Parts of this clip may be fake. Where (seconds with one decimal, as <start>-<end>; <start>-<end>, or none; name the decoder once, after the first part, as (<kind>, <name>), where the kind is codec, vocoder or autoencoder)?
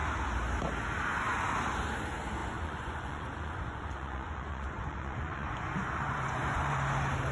2.4-6.8 (vocoder, Vocos)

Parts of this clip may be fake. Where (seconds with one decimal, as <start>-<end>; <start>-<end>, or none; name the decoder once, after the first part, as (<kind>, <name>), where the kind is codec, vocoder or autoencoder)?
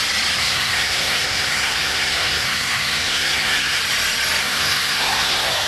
0.4-3.8 (codec, SNAC); 4.4-5.7